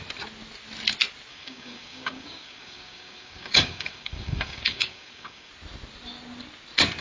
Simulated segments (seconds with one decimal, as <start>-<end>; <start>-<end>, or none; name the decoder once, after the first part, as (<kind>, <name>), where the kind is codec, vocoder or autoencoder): 1.3-5.5 (codec, DAC)